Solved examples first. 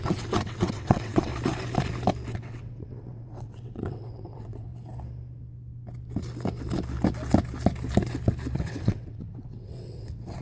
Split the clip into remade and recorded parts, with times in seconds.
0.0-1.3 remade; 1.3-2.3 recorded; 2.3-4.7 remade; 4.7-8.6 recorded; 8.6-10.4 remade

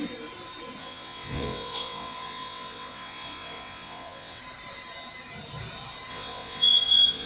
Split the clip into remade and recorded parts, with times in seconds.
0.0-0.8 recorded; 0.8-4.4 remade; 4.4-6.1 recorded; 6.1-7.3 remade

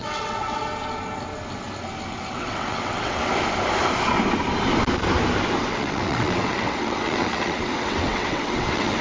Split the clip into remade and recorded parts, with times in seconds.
0.0-0.6 remade; 0.6-2.3 recorded; 2.3-3.3 remade; 3.3-5.6 recorded; 5.6-9.0 remade